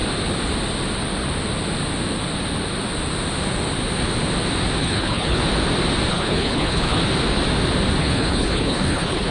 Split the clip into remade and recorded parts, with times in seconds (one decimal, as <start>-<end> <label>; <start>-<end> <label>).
0.0-4.8 recorded; 4.8-5.4 remade; 5.4-6.1 recorded; 6.1-7.0 remade; 7.0-8.0 recorded; 8.0-9.3 remade